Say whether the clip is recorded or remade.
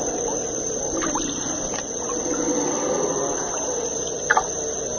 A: recorded